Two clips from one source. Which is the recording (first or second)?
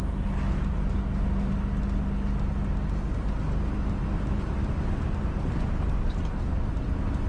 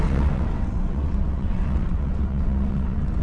first